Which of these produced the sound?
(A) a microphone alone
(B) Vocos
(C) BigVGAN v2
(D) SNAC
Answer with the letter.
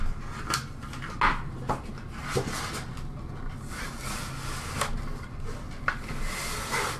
A